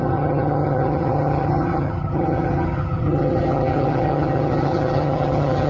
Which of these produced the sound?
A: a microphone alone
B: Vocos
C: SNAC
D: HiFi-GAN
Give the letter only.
D